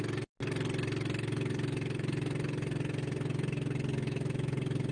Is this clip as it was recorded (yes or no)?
yes